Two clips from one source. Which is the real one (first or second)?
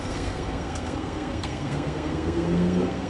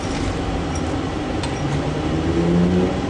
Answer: second